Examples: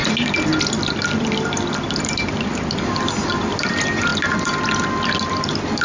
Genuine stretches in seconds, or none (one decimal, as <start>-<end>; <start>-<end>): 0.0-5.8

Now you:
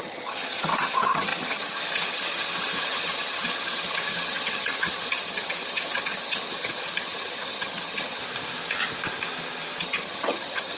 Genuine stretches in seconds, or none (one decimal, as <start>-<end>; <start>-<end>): 8.2-9.8

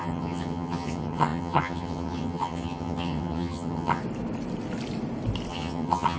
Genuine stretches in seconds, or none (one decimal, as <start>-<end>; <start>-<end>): 4.0-5.5

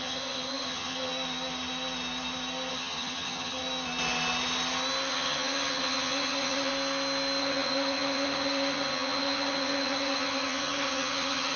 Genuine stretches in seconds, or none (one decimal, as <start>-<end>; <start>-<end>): 1.1-2.7; 3.6-5.1; 6.7-7.4

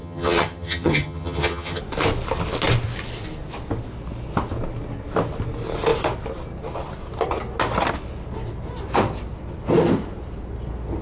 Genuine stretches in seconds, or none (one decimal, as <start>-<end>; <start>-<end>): 1.8-11.0

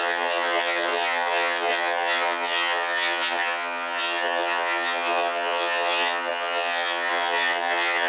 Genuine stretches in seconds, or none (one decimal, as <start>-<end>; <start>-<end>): none

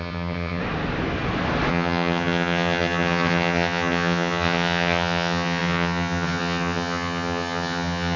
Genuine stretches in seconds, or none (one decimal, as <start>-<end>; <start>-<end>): 0.6-1.7

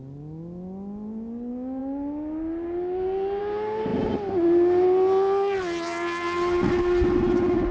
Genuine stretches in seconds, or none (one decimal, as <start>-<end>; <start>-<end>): 0.0-7.7